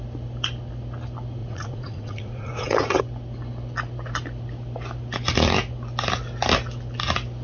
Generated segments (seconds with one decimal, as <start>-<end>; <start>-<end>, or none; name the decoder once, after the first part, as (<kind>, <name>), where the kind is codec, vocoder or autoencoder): 1.4-3.0 (vocoder, Vocos)